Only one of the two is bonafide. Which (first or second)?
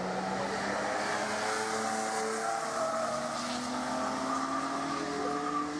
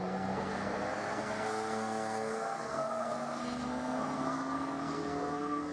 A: first